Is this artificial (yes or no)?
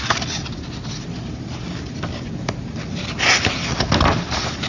no